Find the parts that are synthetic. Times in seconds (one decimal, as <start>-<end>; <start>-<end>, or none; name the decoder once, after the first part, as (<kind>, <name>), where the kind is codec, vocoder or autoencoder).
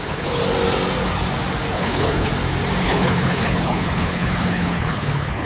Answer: 0.0-0.4 (codec, HILCodec); 1.7-2.3; 2.8-5.5